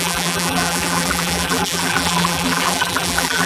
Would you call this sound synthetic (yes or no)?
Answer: yes